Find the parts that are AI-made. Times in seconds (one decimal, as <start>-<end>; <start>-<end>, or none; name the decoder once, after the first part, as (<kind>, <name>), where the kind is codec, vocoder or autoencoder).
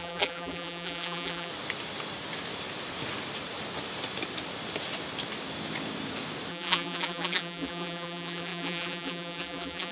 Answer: 0.0-1.5 (vocoder, BigVGAN v2); 6.5-9.9